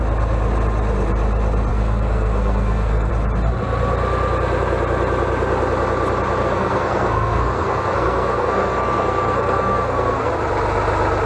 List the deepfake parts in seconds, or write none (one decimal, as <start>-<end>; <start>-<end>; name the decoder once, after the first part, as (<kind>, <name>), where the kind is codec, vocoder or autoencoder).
1.7-3.1 (codec, SNAC); 6.4-10.3